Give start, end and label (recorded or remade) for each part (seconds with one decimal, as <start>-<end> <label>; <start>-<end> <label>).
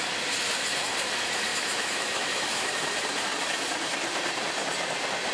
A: 0.0-1.5 recorded; 1.5-2.7 remade; 2.7-5.3 recorded